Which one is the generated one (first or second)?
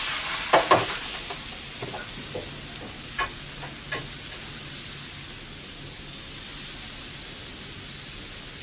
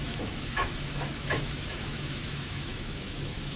second